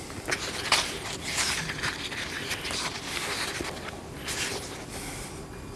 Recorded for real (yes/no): yes